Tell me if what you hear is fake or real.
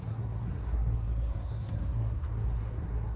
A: fake